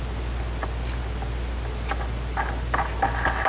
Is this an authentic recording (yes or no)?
yes